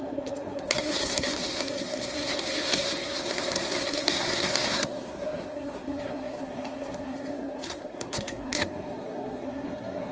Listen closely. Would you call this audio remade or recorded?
remade